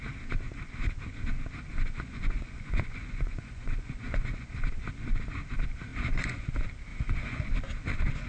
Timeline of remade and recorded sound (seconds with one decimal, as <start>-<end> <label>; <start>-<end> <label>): 0.0-1.7 recorded; 1.7-4.5 remade; 4.5-5.9 recorded; 5.9-6.5 remade; 6.5-6.9 recorded; 6.9-7.4 remade; 7.4-8.3 recorded